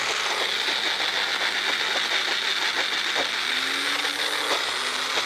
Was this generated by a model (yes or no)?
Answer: no